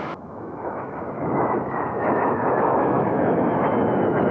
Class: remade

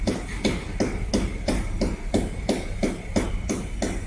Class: recorded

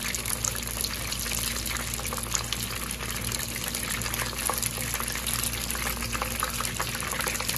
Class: recorded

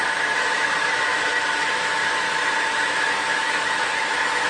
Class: remade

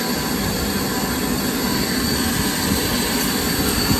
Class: recorded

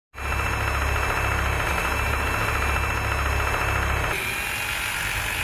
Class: recorded